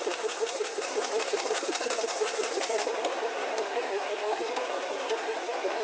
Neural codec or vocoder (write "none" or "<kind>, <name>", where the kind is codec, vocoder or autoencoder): codec, SNAC